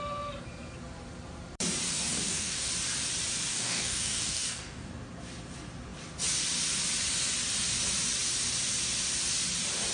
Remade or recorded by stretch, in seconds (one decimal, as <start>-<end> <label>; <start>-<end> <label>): 0.0-2.1 recorded; 2.1-2.7 remade; 2.7-3.5 recorded; 3.5-4.9 remade; 4.9-9.9 recorded